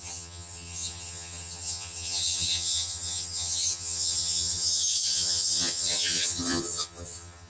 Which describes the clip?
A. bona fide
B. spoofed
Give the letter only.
B